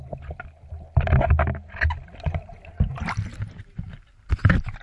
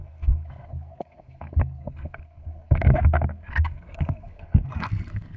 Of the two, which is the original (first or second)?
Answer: first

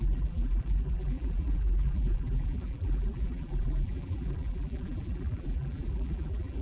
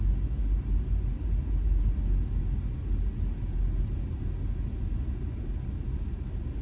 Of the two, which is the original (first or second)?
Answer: second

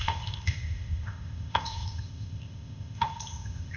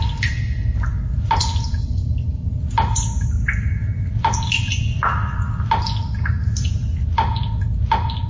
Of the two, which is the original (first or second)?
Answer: second